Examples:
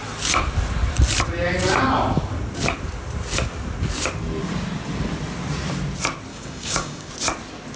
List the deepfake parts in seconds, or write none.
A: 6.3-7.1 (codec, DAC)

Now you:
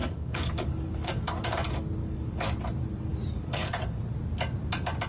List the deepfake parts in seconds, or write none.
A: 0.0-1.3 (codec, DAC); 2.0-2.5; 3.1-4.0

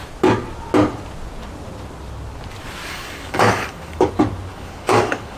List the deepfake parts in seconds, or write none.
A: 2.9-4.1 (codec, DAC); 4.5-5.4

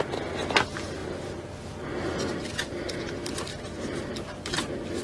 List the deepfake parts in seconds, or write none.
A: none

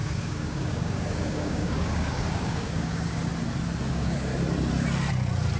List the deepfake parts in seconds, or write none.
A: 0.0-3.2 (codec, DAC); 3.9-4.3

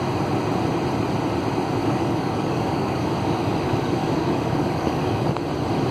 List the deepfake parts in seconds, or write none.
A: 1.8-5.3 (codec, DAC)